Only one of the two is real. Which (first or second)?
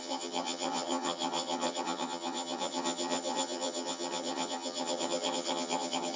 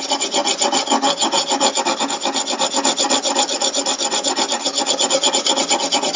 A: second